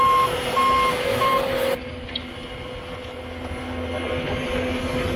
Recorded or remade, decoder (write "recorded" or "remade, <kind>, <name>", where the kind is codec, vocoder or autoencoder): recorded